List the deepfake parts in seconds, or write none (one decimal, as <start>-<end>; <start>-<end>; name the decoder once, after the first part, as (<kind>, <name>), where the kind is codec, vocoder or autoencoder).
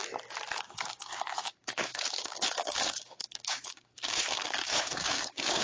0.6-5.6 (codec, DAC)